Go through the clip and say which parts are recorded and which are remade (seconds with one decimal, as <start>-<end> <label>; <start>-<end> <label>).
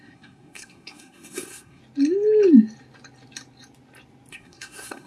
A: 0.0-1.8 remade; 1.8-4.3 recorded; 4.3-5.1 remade